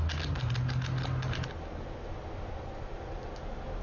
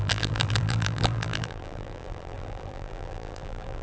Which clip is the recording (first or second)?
first